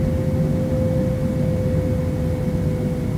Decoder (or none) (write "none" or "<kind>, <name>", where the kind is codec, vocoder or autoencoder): none